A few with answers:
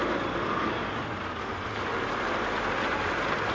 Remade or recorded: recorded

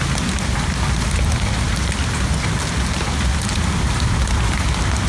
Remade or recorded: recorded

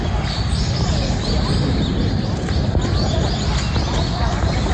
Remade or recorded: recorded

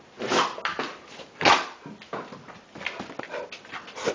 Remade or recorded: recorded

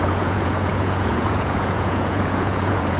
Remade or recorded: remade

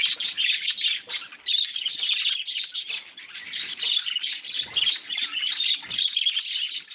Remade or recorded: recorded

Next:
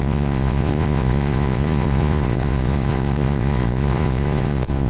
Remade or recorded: remade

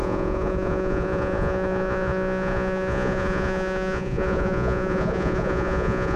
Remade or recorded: remade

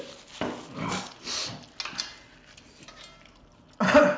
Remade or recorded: recorded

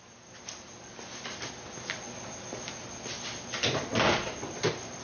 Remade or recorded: recorded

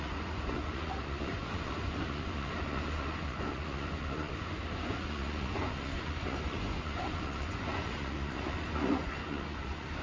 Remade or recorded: remade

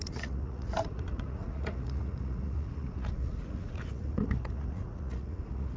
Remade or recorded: remade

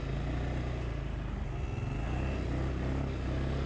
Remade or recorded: recorded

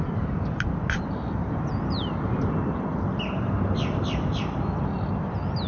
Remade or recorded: recorded